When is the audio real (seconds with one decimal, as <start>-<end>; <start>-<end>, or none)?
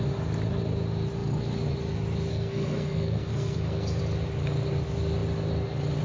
0.0-2.3; 4.0-6.0